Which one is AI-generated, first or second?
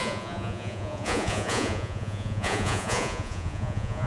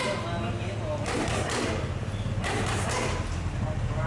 first